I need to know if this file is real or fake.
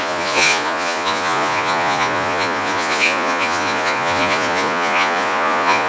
fake